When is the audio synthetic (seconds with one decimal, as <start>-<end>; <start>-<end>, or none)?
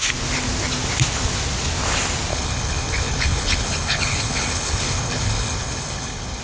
2.3-6.4